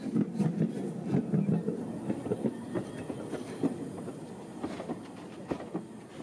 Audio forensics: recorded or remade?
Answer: recorded